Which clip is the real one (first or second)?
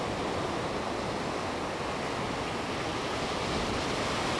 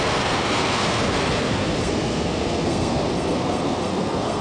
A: first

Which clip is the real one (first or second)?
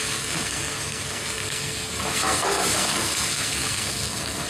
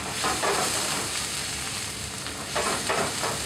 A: second